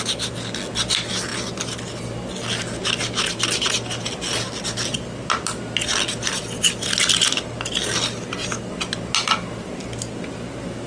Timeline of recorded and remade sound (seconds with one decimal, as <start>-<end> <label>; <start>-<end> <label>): 0.0-10.9 recorded